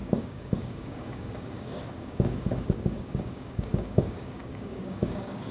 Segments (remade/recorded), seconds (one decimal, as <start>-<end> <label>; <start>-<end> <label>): 0.0-5.5 remade